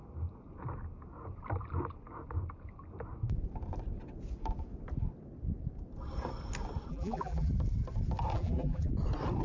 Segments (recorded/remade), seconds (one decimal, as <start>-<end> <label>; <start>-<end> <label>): 0.0-6.9 recorded; 6.9-7.5 remade; 7.5-8.3 recorded; 8.3-8.9 remade; 8.9-9.4 recorded